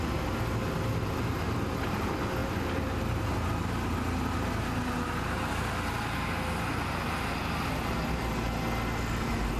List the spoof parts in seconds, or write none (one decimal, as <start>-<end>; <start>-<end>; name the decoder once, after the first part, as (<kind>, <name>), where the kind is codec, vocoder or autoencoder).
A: 2.4-3.2 (vocoder, BigVGAN v2)